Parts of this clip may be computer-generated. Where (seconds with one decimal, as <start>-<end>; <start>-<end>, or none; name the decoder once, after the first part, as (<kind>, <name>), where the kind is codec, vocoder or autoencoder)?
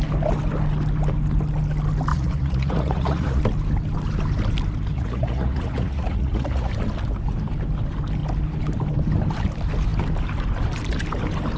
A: 2.1-3.4 (vocoder, Vocos); 4.9-6.7